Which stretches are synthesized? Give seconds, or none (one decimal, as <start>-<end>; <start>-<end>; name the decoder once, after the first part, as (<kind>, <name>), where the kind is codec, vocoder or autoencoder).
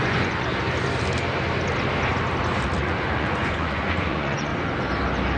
0.0-0.5 (vocoder, Vocos); 2.8-4.5